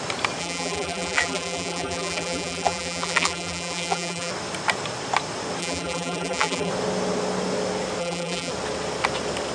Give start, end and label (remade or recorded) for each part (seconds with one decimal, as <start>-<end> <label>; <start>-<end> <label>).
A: 0.0-0.4 recorded; 0.4-4.3 remade; 4.3-5.6 recorded; 5.6-6.7 remade; 6.7-8.0 recorded; 8.0-8.5 remade; 8.5-9.5 recorded